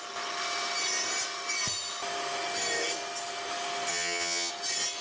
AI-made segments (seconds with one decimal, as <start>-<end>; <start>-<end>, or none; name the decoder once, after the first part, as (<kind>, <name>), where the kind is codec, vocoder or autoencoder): 3.9-4.5 (vocoder, HiFi-GAN)